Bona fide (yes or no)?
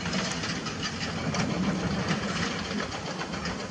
yes